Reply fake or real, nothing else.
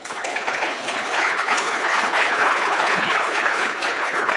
fake